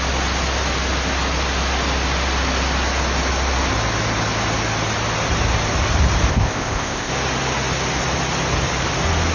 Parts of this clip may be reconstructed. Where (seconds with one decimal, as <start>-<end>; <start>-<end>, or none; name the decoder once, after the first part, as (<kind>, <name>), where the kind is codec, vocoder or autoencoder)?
6.3-7.1 (codec, ZipCodec)